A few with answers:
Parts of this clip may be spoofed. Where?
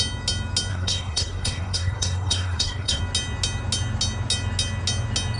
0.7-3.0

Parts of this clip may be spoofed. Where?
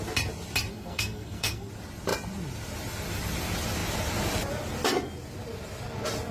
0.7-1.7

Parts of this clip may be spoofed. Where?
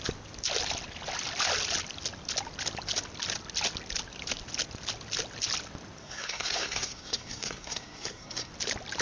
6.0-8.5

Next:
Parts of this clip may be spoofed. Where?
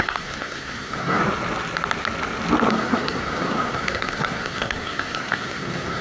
0.0-1.2; 2.7-6.0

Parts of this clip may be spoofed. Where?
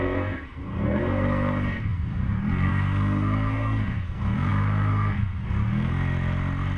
0.0-5.9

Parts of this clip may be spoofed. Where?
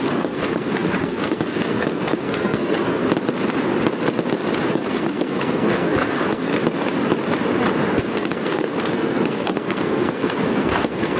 0.0-3.0; 4.7-6.5; 8.0-11.2